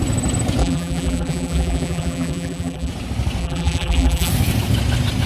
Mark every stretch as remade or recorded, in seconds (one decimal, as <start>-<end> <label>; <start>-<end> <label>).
0.0-0.6 recorded; 0.6-2.9 remade; 2.9-3.4 recorded; 3.4-4.3 remade; 4.3-5.3 recorded